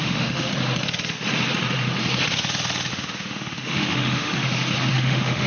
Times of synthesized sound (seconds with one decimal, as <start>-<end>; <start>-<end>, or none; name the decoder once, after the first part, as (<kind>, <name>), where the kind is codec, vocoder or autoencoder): 0.0-0.5 (autoencoder, DAC-VAE); 2.9-4.3; 4.9-5.5